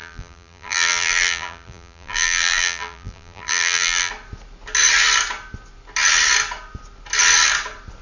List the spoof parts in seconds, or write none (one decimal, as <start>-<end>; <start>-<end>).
0.0-4.1